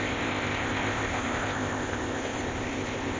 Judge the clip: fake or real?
fake